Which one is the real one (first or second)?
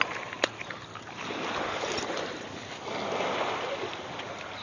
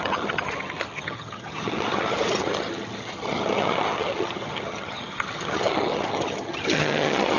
first